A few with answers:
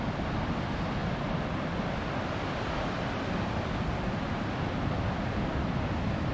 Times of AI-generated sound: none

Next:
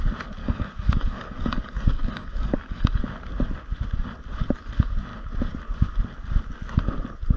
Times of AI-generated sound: 0.4-3.0